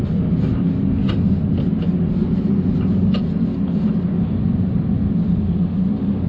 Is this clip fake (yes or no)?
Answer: no